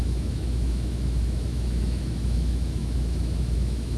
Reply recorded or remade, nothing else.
remade